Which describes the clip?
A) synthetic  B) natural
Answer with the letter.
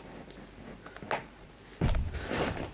B